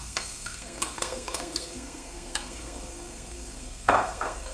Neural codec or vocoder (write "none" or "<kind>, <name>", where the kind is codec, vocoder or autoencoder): codec, SNAC